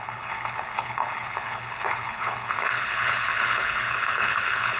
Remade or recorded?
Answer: remade